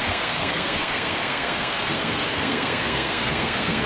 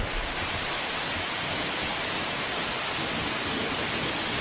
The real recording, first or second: second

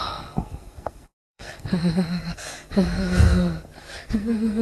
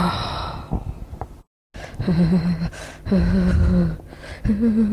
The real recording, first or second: second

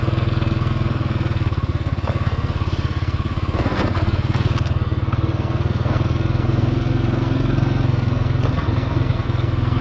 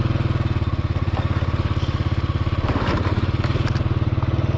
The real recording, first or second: second